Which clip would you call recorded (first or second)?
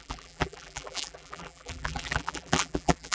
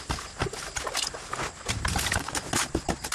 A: second